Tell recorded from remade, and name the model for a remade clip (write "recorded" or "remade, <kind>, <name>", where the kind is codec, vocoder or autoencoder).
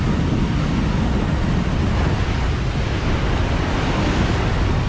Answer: recorded